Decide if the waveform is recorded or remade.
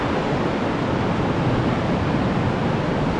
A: recorded